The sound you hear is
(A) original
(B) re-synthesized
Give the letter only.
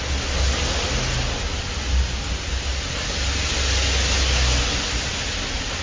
A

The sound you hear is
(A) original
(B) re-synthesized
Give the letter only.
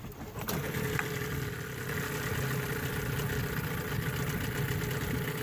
A